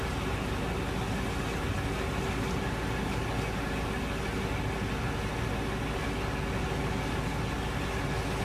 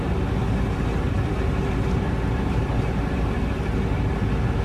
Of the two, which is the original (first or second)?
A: first